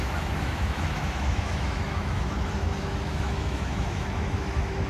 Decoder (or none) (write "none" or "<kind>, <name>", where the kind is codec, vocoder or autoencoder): autoencoder, DAC-VAE